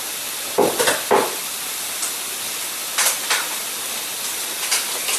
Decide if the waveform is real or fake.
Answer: real